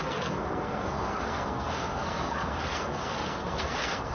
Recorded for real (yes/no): no